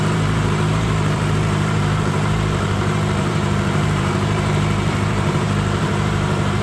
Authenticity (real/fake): fake